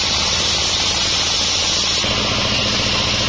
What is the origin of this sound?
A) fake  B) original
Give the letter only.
B